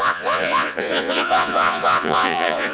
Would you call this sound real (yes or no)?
no